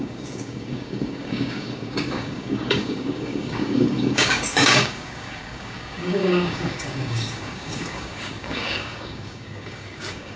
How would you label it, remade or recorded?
remade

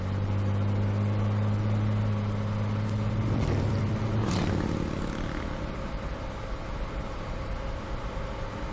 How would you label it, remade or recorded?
recorded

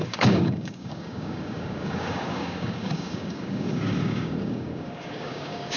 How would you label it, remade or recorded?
remade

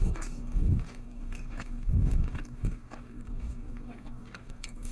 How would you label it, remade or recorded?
remade